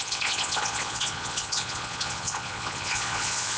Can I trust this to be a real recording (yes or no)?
no